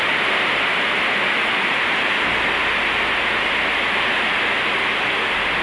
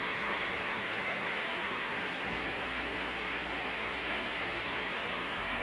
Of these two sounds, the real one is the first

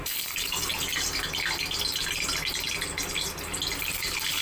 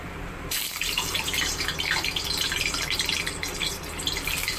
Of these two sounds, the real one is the first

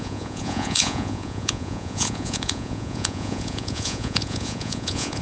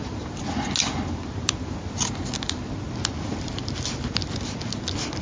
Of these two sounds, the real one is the second